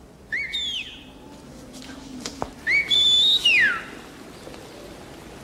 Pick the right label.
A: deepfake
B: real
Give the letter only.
B